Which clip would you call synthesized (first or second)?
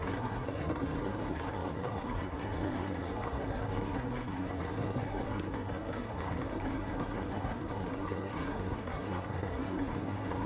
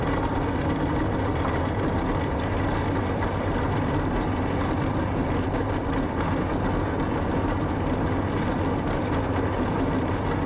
first